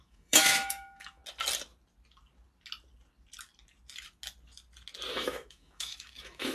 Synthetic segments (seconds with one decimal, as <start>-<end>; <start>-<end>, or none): 0.0-1.2; 5.1-6.5